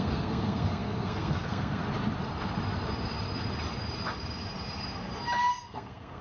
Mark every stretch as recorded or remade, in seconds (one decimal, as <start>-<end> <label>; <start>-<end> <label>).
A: 0.0-1.8 remade; 1.8-5.5 recorded; 5.5-6.2 remade